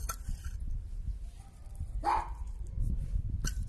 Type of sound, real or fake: real